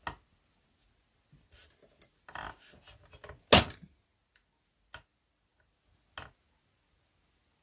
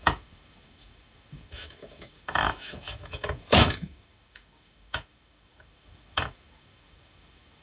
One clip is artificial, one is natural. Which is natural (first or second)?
first